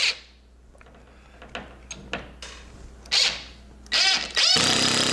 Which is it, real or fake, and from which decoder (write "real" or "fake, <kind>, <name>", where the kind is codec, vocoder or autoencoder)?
real